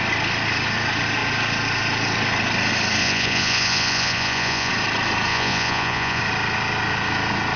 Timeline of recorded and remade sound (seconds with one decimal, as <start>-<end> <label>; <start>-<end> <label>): 0.0-3.0 recorded; 3.0-4.7 remade; 4.7-5.3 recorded; 5.3-6.2 remade; 6.2-7.6 recorded